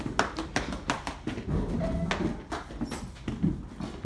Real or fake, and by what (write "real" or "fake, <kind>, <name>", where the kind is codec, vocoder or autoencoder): real